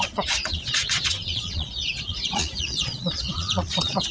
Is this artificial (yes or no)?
yes